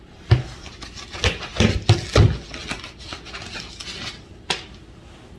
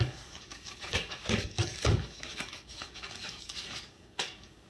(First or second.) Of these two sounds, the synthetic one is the second